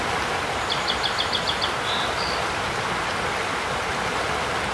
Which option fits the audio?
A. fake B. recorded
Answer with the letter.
B